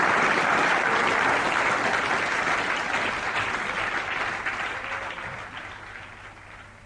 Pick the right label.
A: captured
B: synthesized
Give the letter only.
A